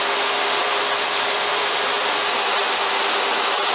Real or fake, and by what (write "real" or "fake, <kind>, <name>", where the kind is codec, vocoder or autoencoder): real